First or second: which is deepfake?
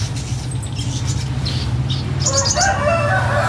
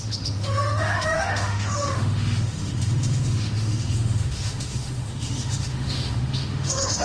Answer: second